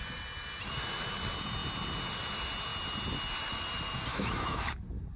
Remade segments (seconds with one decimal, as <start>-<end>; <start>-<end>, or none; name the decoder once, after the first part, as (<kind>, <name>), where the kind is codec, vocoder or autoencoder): 4.1-4.8 (autoencoder, DAC-VAE)